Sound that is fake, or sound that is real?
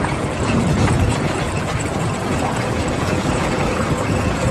fake